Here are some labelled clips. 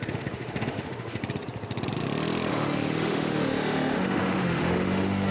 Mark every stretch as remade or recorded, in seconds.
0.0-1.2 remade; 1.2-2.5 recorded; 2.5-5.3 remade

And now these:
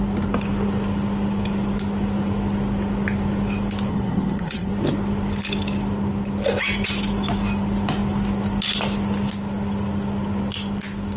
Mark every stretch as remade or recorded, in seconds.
0.0-3.9 recorded; 3.9-4.7 remade; 4.7-11.2 recorded